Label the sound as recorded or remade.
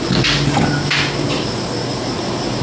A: recorded